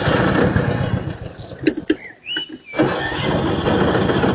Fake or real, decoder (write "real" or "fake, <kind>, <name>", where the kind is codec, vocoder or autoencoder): real